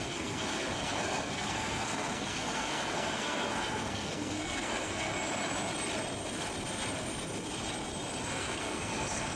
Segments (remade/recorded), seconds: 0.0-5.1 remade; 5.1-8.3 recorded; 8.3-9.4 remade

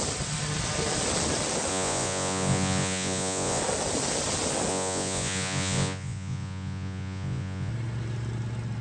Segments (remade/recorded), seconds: 0.0-1.7 recorded; 1.7-3.6 remade; 3.6-4.7 recorded; 4.7-7.7 remade; 7.7-8.8 recorded

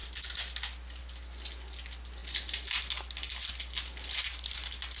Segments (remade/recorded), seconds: 0.0-5.0 recorded

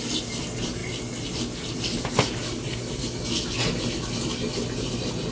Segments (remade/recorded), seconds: 0.0-5.3 recorded